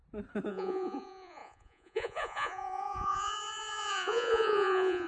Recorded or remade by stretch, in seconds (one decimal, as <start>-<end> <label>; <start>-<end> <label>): 0.0-0.5 recorded; 0.5-5.1 remade